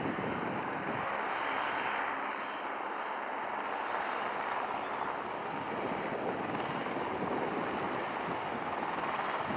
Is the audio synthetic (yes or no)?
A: no